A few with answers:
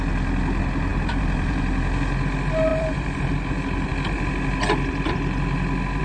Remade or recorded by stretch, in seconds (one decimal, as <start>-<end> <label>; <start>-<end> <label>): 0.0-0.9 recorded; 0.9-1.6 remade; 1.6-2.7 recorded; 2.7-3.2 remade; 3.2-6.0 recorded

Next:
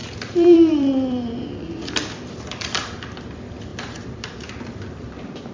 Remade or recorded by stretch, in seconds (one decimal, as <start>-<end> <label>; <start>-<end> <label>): 0.0-3.3 remade; 3.3-3.7 recorded; 3.7-4.5 remade; 4.5-5.5 recorded

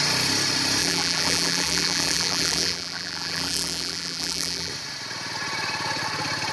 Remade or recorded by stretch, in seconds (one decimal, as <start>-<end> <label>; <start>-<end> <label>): 0.0-0.8 recorded; 0.8-4.7 remade; 4.7-6.5 recorded